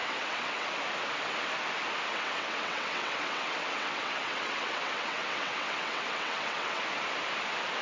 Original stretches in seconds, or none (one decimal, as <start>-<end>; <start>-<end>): 0.8-2.1; 6.8-7.8